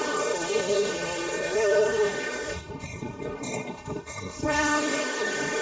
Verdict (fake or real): fake